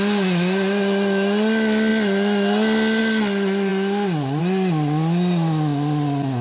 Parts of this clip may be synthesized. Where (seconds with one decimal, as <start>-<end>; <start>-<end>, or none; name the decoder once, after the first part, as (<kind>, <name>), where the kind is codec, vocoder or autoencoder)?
none